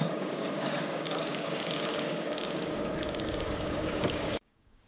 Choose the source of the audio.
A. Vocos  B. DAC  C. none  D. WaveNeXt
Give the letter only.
B